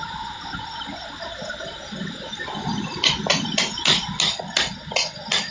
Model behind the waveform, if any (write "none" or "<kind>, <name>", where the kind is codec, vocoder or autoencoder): none